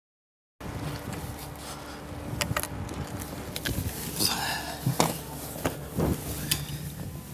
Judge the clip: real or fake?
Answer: real